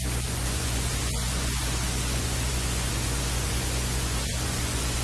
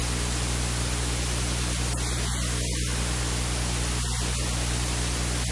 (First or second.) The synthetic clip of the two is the first